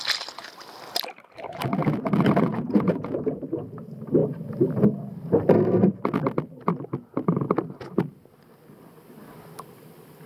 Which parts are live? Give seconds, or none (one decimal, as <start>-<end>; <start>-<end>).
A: 0.0-2.5; 3.4-10.3